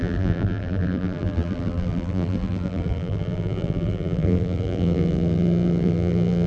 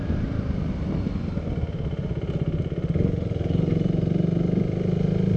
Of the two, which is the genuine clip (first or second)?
second